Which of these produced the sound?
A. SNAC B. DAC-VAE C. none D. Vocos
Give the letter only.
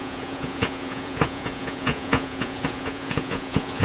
D